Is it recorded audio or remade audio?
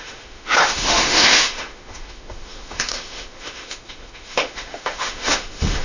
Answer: remade